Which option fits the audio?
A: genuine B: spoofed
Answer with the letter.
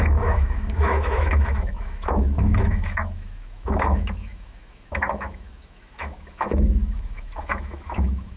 B